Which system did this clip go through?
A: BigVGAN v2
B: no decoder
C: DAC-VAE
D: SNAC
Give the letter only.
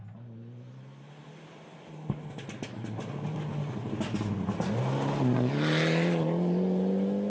B